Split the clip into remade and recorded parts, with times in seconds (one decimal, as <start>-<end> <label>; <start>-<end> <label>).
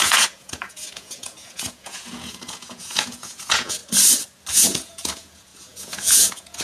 0.0-3.8 remade; 3.8-4.5 recorded; 4.5-6.6 remade